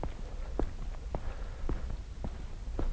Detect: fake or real real